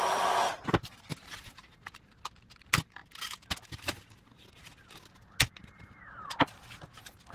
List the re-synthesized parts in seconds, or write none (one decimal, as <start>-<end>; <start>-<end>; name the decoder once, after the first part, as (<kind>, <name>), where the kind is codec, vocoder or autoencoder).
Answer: 5.6-6.3 (vocoder, BigVGAN v2)